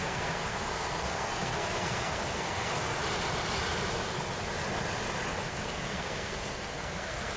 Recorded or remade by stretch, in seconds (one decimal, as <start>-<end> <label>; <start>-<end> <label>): 0.0-3.0 remade; 3.0-5.4 recorded; 5.4-7.4 remade